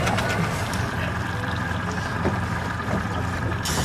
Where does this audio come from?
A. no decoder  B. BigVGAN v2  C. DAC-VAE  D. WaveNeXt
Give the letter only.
B